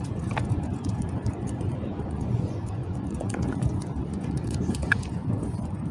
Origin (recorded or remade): remade